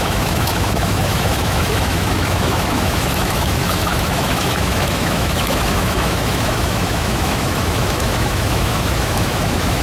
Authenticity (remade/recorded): remade